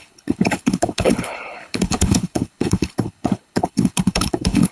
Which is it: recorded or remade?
remade